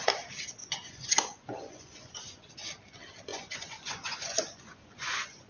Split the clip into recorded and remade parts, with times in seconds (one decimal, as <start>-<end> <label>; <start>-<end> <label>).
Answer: 0.0-0.6 recorded; 0.6-2.5 remade; 2.5-3.3 recorded; 3.3-5.5 remade